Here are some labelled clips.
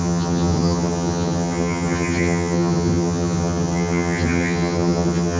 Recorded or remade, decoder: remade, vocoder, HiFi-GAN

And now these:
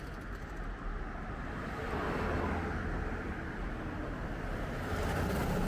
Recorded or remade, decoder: recorded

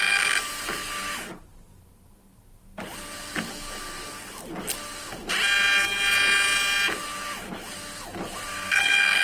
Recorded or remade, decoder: recorded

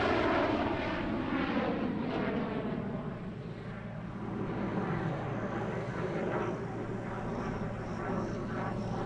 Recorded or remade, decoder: recorded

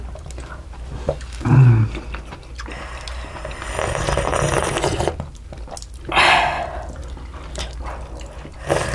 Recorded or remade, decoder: recorded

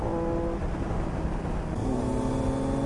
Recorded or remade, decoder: recorded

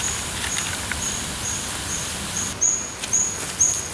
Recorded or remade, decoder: recorded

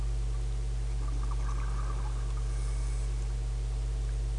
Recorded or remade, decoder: recorded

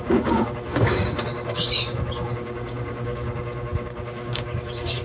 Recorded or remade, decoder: remade, codec, DAC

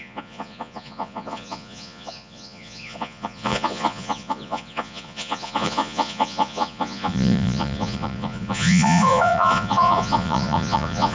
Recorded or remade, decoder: remade, vocoder, Vocos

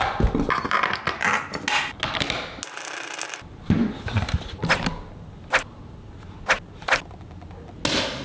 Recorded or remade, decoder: recorded